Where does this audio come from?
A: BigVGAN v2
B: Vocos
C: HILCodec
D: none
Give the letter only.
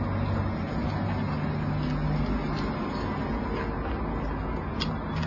D